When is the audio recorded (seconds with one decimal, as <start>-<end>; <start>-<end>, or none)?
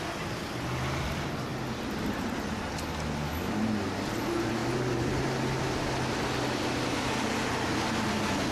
0.0-8.5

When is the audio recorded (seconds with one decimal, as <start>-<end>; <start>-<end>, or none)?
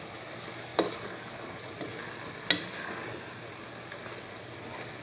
0.0-5.0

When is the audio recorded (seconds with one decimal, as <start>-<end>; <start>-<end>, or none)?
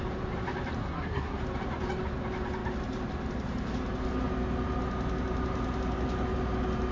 0.0-0.8; 1.4-6.9